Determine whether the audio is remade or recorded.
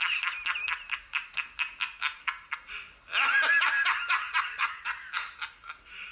recorded